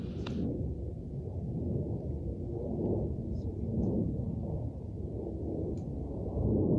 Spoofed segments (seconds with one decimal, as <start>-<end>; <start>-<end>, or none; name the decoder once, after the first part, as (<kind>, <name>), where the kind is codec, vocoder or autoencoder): 3.5-4.0 (vocoder, BigVGAN v2); 5.6-6.8